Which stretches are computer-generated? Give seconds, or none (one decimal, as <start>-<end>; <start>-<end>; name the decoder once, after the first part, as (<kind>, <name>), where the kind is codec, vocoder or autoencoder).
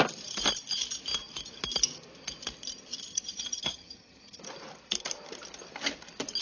3.1-4.4 (vocoder, HiFi-GAN)